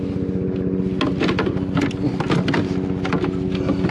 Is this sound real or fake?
real